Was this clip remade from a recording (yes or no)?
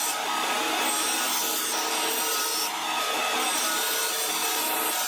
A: no